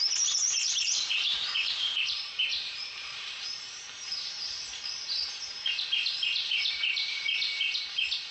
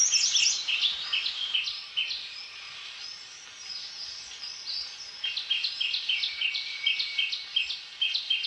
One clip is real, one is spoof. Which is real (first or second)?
second